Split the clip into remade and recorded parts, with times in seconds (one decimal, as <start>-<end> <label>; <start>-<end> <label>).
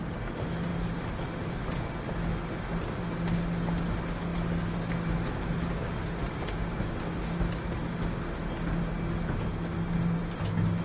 0.0-10.8 recorded